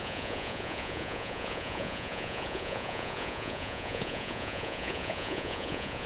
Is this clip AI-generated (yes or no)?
yes